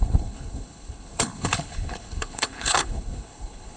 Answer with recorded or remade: remade